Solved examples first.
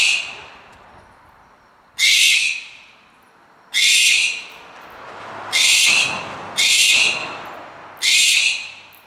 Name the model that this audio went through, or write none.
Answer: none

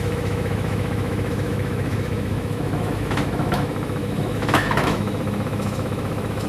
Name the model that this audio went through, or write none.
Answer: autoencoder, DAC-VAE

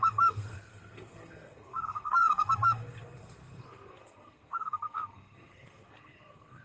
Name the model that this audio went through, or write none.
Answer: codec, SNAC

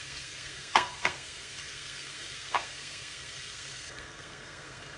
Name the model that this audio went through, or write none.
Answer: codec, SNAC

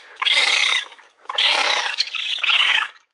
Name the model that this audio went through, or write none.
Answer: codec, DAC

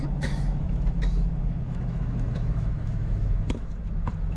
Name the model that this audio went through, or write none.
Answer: autoencoder, DAC-VAE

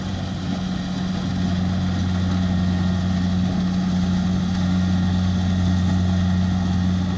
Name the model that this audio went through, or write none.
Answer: none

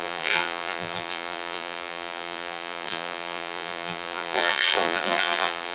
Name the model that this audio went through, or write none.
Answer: vocoder, BigVGAN v2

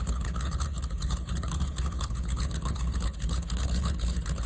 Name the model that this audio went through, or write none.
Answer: codec, HILCodec